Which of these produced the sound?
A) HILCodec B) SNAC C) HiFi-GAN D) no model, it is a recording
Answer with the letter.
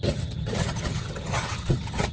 C